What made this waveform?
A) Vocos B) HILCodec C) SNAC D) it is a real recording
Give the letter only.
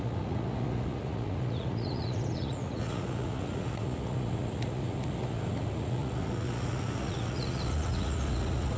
A